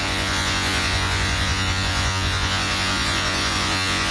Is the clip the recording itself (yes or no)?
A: no